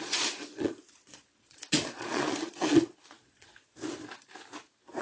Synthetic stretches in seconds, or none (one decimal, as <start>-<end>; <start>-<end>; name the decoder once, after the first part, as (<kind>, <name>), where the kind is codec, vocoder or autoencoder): 0.0-3.5 (vocoder, Vocos)